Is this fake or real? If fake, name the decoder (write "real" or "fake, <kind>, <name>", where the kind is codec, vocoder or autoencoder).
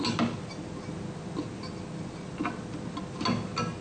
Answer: real